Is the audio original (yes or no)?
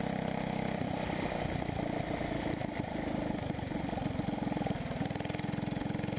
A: yes